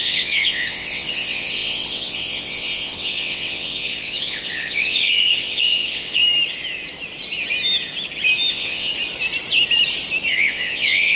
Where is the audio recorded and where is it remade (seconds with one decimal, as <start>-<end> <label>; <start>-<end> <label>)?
0.0-6.2 remade; 6.2-8.5 recorded; 8.5-8.9 remade; 8.9-10.3 recorded; 10.3-11.2 remade